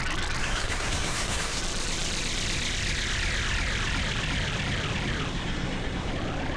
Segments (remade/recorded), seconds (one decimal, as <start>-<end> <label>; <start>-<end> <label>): 0.0-0.4 recorded; 0.4-1.6 remade; 1.6-5.3 recorded; 5.3-6.1 remade; 6.1-6.6 recorded